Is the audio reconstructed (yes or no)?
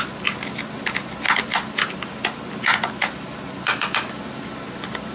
no